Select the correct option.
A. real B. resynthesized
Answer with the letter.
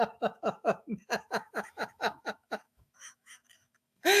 B